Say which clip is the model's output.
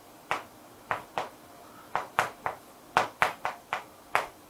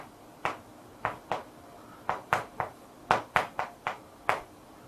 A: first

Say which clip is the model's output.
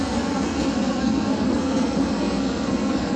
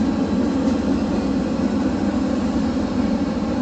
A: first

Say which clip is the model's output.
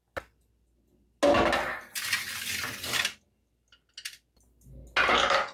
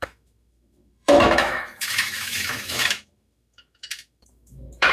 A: second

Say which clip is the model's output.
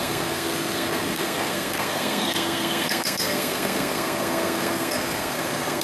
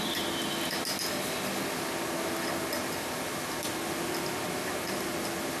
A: first